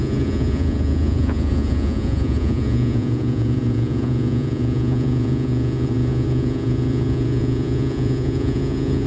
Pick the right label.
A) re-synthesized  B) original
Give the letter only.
A